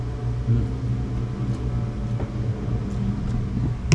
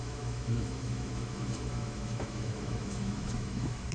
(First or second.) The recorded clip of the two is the first